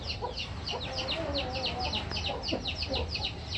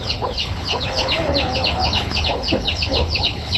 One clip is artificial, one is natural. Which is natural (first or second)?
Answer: first